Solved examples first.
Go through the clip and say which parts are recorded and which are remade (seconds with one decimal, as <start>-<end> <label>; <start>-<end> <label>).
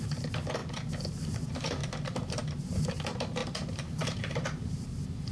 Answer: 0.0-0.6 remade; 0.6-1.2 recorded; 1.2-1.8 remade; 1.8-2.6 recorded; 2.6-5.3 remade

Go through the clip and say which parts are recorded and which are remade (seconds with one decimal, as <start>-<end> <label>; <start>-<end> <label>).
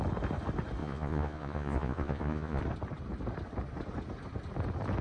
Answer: 0.0-0.8 recorded; 0.8-2.6 remade; 2.6-5.0 recorded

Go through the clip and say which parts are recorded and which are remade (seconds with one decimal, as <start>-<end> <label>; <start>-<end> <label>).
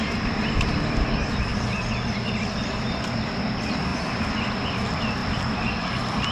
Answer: 0.0-5.2 remade; 5.2-6.3 recorded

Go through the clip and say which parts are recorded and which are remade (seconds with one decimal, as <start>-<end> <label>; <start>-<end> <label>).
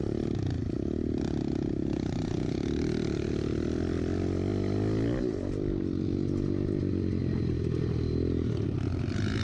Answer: 0.0-9.4 recorded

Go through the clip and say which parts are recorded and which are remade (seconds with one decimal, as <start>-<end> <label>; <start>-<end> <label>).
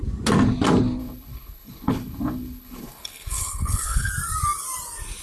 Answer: 0.0-1.0 recorded; 1.0-4.1 remade; 4.1-5.2 recorded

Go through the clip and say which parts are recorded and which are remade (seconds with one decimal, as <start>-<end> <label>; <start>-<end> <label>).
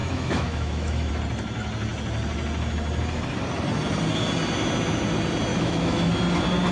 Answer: 0.0-1.1 remade; 1.1-5.5 recorded; 5.5-6.1 remade; 6.1-6.7 recorded